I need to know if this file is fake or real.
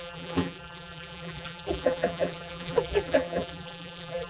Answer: fake